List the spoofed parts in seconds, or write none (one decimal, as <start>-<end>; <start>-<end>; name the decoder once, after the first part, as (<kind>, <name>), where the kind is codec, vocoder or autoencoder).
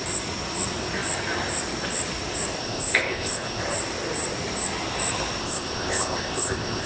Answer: 2.6-3.6 (codec, ZipCodec); 5.4-6.9